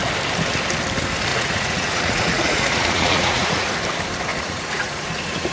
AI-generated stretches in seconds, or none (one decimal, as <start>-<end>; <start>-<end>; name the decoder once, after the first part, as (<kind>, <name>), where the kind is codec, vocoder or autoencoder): 1.3-3.7 (vocoder, Vocos); 4.3-5.5